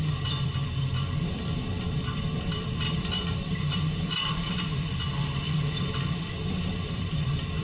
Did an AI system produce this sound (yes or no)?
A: yes